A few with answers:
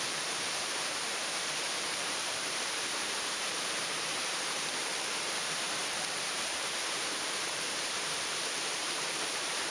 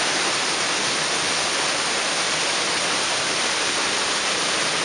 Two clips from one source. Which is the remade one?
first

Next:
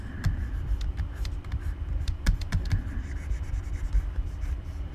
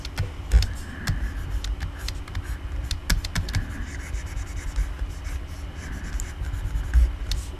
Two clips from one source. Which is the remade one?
first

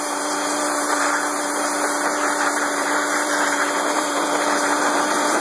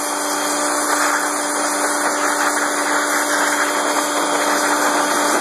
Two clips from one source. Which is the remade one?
first